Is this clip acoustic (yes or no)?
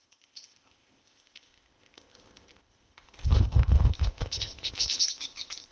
no